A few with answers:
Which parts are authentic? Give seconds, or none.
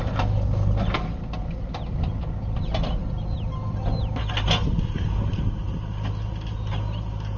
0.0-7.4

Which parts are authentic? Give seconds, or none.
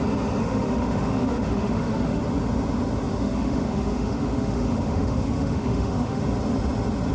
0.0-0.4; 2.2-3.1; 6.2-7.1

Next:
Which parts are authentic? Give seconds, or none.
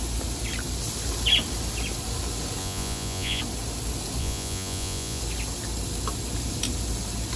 0.0-2.6; 3.4-4.2; 5.2-7.4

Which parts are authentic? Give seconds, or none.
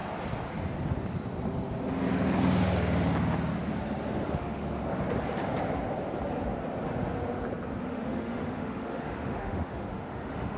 0.0-4.3; 4.8-7.8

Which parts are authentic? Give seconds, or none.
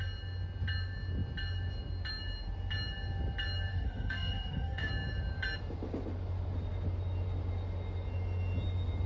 0.0-3.7; 4.9-9.1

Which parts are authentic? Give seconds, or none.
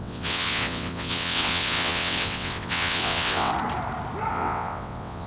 3.5-4.3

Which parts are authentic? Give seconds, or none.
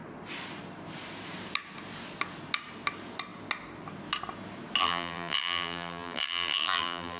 0.0-4.8